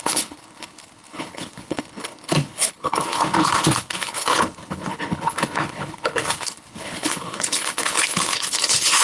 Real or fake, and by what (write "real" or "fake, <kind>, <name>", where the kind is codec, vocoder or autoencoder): fake, codec, HILCodec